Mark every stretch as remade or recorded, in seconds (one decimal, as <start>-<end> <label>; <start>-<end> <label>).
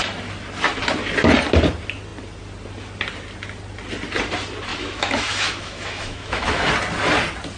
0.0-4.7 recorded; 4.7-6.7 remade; 6.7-7.6 recorded